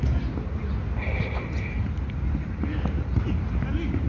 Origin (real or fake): real